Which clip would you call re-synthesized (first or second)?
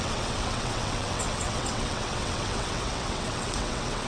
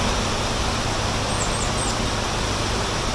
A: first